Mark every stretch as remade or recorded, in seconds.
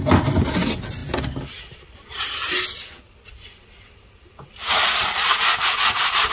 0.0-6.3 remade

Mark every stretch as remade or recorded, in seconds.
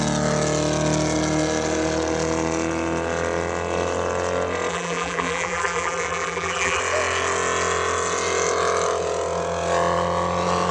0.0-4.7 recorded; 4.7-6.8 remade; 6.8-10.7 recorded